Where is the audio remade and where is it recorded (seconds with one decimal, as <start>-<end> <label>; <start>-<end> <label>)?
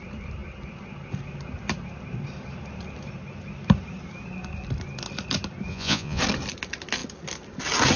0.0-5.7 recorded; 5.7-6.2 remade; 6.2-8.0 recorded